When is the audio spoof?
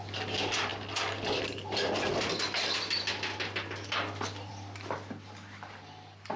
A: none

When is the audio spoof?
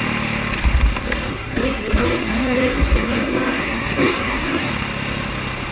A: 1.3-4.7 (codec, SNAC)